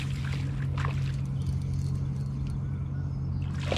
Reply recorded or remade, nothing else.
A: recorded